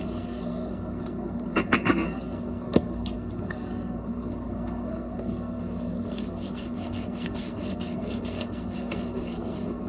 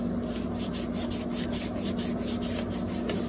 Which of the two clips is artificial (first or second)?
first